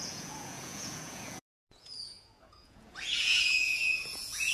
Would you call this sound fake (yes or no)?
yes